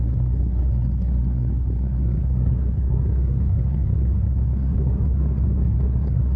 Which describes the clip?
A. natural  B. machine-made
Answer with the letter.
B